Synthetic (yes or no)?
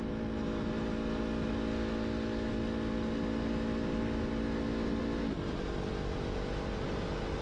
no